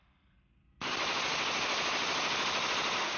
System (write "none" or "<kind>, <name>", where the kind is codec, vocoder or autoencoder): none